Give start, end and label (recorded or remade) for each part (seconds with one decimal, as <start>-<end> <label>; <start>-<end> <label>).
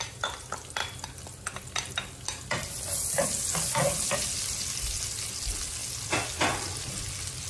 0.0-7.5 recorded